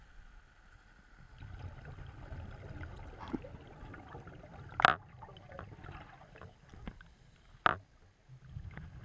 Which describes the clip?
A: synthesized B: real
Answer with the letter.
B